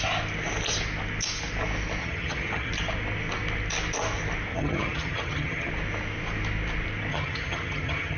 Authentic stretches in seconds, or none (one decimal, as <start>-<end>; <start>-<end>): 0.0-2.0; 2.7-4.5; 5.7-7.1